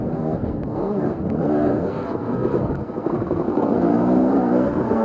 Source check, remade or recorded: remade